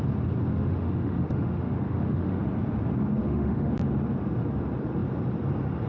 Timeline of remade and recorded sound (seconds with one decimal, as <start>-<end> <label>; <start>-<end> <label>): 0.0-0.5 recorded; 0.5-2.4 remade; 2.4-3.2 recorded; 3.2-3.7 remade; 3.7-5.9 recorded